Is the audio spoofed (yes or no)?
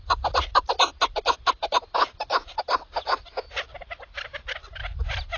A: no